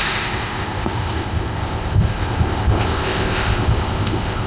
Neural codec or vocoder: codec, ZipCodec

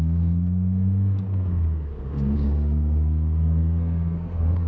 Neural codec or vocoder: codec, SNAC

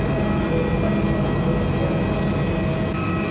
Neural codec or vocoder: none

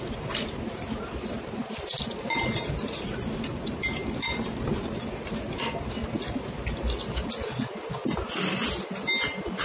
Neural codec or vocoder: none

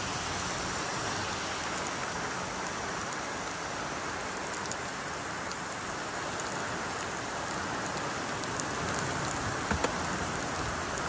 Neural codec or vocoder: none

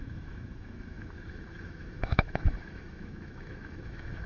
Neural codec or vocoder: autoencoder, DAC-VAE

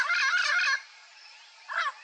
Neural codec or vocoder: none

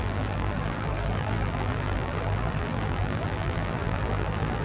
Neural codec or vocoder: vocoder, BigVGAN v2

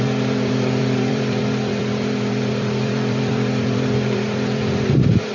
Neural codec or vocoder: vocoder, BigVGAN v2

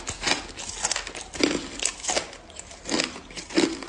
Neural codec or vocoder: none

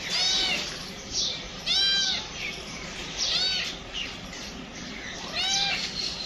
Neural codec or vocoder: none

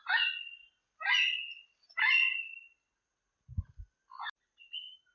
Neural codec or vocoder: none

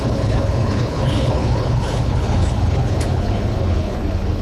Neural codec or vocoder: codec, HILCodec